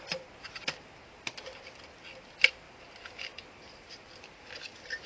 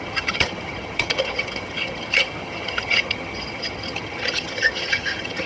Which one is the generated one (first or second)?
second